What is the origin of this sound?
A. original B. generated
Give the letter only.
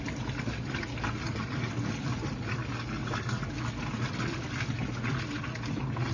A